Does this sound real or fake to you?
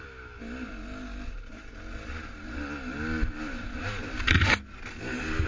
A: real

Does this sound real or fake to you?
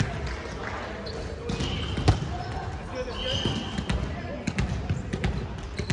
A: real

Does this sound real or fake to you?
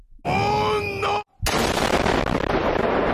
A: real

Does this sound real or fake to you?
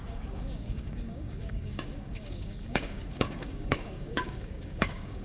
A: fake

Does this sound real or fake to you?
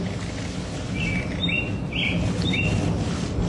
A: real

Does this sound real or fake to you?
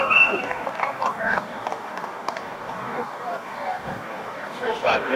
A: fake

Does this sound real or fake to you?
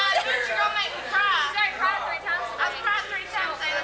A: real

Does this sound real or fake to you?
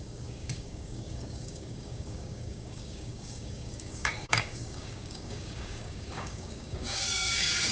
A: fake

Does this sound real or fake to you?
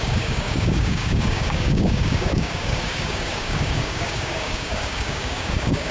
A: fake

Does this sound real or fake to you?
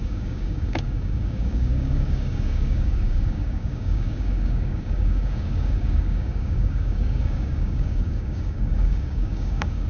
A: fake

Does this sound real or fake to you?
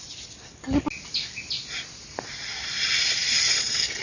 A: real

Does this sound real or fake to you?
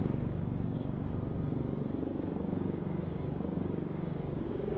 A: fake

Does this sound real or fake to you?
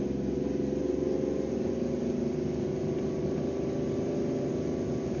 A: real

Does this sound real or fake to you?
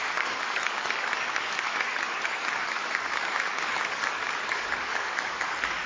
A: fake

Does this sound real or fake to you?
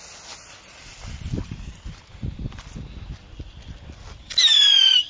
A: real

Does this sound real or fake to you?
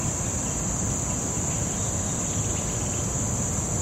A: real